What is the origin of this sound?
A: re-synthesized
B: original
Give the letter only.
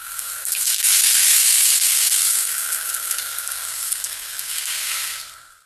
A